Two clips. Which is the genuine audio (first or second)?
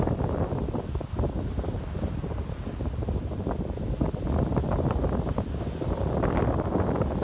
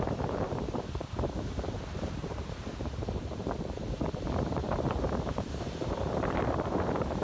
first